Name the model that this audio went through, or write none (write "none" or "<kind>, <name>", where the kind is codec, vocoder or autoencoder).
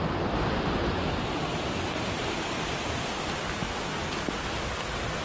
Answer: none